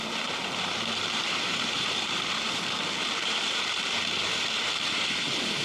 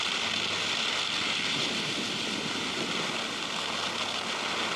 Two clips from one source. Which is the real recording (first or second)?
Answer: second